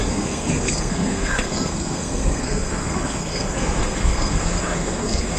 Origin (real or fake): fake